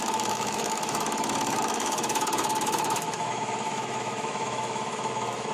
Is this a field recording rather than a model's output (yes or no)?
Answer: no